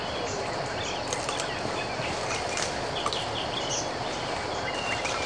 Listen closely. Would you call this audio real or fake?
real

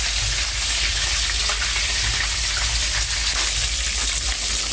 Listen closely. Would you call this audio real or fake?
real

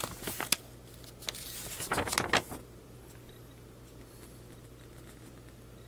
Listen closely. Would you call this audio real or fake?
real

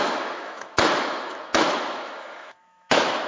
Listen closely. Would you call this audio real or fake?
fake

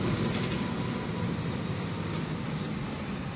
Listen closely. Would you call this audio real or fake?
real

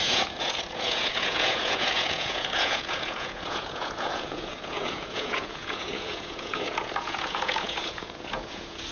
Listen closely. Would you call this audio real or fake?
fake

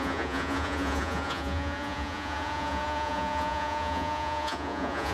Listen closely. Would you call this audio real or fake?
fake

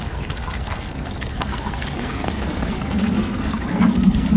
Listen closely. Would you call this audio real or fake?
fake